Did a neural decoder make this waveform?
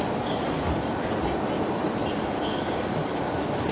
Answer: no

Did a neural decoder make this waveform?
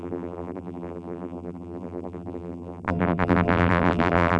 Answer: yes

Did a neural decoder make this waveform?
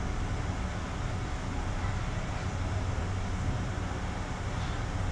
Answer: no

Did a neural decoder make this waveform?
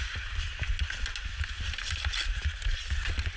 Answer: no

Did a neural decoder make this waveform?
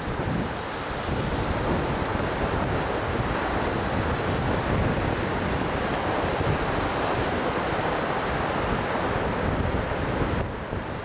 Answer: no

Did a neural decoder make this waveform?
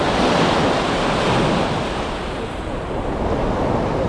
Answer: no